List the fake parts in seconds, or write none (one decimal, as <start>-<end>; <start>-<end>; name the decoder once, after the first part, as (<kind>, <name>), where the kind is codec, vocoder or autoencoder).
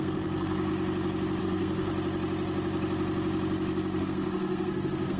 0.0-0.7 (codec, SNAC); 1.4-1.9; 4.0-5.2